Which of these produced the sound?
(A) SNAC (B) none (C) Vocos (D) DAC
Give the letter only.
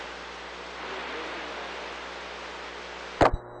B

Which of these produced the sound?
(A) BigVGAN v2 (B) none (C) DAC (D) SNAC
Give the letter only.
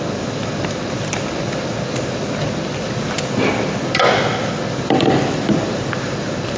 B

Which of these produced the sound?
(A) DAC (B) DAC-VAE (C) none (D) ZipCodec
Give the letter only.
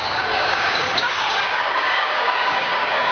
A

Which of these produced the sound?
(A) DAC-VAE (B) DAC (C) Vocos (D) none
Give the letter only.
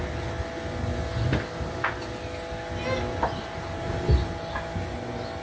D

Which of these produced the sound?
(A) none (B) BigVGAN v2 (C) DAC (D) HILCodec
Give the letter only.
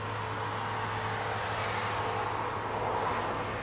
A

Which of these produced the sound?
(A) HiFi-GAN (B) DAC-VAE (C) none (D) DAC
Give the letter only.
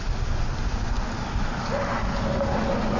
C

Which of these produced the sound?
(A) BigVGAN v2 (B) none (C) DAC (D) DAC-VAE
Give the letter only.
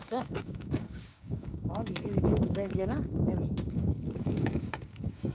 C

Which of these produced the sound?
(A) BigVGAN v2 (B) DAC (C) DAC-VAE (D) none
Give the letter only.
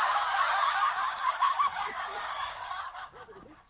B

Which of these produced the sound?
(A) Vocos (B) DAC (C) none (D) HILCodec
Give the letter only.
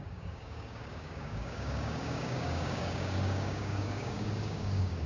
B